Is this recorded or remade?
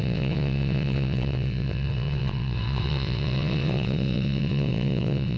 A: remade